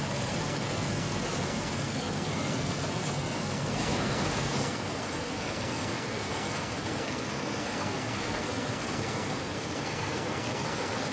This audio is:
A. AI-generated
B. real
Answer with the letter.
A